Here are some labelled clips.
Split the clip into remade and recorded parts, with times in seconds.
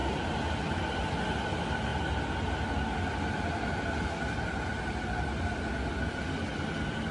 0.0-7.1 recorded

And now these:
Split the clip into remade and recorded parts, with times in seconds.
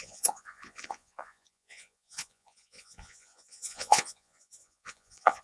0.0-5.4 remade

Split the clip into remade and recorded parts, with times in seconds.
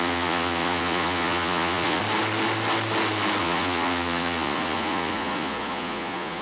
0.0-2.0 remade; 2.0-3.4 recorded; 3.4-6.4 remade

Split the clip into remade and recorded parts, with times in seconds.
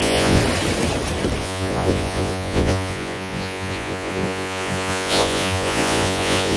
0.0-0.4 remade; 0.4-1.4 recorded; 1.4-6.6 remade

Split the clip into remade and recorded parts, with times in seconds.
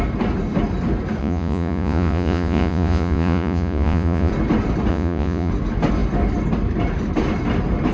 0.0-1.2 recorded; 1.2-4.3 remade; 4.3-4.9 recorded; 4.9-5.5 remade; 5.5-7.9 recorded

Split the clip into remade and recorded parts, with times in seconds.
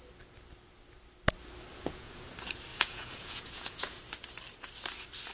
0.0-1.7 recorded; 1.7-2.3 remade; 2.3-2.7 recorded; 2.7-4.0 remade; 4.0-5.3 recorded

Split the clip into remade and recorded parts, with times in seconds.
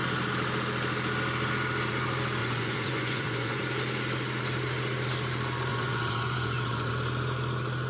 0.0-2.4 recorded; 2.4-3.6 remade; 3.6-5.7 recorded; 5.7-6.9 remade; 6.9-7.9 recorded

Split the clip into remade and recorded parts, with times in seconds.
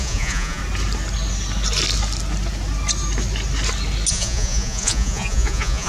0.0-0.6 remade; 0.6-4.1 recorded; 4.1-5.9 remade